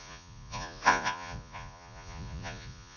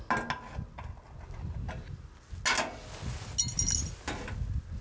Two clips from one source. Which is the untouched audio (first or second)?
second